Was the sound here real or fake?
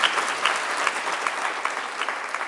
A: real